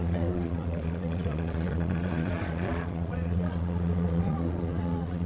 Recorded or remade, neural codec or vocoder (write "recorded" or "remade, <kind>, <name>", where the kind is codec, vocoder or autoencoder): remade, vocoder, Vocos